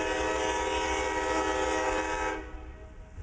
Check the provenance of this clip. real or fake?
real